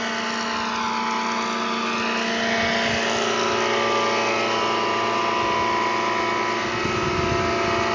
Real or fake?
real